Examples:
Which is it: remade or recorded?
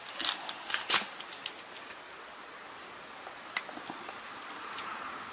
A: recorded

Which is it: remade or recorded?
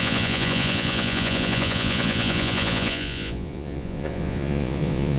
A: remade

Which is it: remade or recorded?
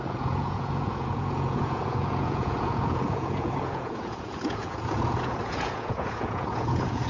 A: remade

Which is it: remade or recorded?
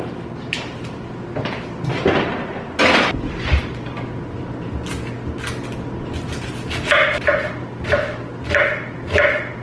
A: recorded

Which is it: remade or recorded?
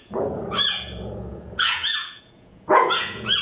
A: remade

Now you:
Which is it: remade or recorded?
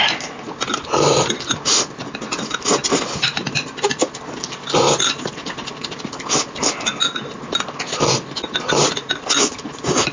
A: recorded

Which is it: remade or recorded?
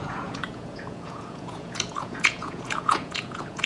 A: remade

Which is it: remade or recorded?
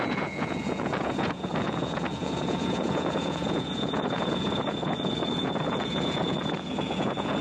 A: remade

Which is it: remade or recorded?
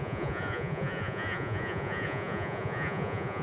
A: remade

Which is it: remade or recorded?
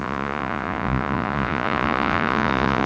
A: remade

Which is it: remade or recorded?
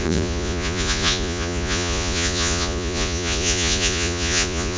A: remade